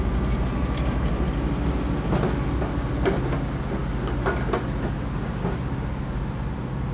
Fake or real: real